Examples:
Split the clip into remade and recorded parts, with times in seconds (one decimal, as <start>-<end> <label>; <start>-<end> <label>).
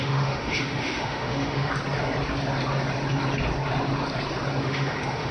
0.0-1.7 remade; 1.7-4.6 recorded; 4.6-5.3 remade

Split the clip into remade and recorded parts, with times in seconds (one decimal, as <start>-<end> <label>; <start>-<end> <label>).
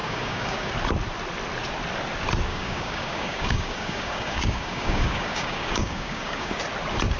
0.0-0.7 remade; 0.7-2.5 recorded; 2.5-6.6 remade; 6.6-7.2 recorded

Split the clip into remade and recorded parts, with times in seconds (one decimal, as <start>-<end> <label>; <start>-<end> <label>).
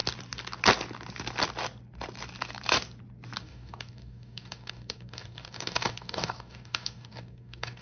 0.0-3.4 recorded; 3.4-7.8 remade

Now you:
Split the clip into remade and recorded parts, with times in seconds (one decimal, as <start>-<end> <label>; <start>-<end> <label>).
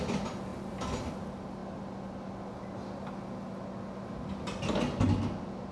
0.0-5.7 recorded